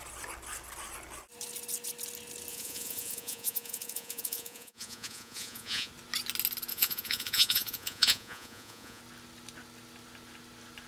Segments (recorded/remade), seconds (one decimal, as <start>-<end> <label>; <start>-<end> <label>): 0.0-2.5 recorded; 2.5-5.9 remade; 5.9-6.7 recorded; 6.7-9.0 remade; 9.0-10.9 recorded